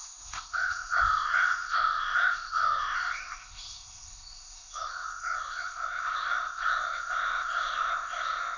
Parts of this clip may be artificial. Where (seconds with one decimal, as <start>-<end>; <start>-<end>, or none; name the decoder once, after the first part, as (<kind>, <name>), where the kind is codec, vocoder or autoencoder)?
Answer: 0.0-8.6 (codec, ZipCodec)